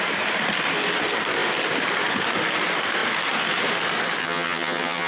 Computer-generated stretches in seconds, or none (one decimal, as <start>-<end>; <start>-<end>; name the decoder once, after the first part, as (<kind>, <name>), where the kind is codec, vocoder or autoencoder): 4.2-5.1 (vocoder, HiFi-GAN)